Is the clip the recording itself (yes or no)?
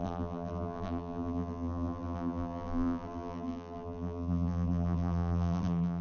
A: no